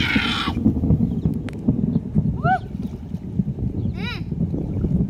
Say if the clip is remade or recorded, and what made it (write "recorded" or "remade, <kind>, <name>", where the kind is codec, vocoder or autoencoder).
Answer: recorded